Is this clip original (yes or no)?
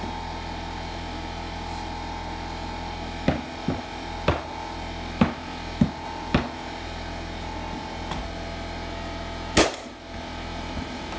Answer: yes